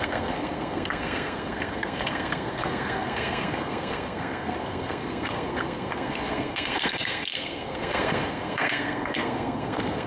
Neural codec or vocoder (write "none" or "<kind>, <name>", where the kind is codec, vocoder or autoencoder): codec, SNAC